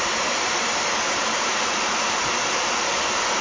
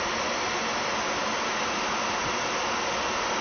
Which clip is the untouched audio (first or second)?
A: second